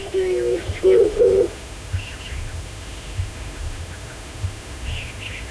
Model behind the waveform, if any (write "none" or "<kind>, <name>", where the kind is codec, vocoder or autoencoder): autoencoder, DAC-VAE